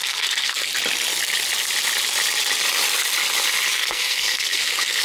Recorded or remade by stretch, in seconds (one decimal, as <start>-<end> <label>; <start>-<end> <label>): 0.0-0.7 remade; 0.7-3.7 recorded; 3.7-5.0 remade